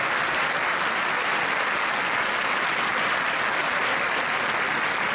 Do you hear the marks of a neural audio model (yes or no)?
no